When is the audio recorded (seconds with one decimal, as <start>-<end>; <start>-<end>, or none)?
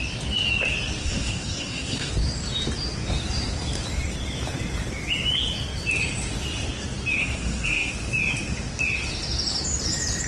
0.0-1.0; 2.1-7.2; 7.9-10.3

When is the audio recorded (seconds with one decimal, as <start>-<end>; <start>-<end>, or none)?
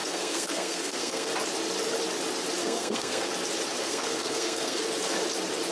1.3-2.6; 3.3-3.8; 4.8-5.7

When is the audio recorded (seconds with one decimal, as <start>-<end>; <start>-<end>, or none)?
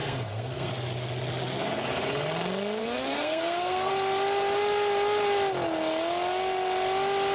0.7-2.8; 3.9-7.3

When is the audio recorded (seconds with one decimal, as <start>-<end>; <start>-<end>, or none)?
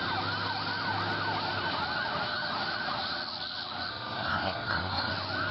0.0-3.9; 5.1-5.5